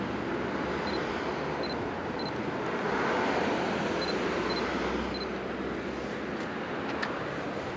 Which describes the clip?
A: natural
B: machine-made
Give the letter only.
A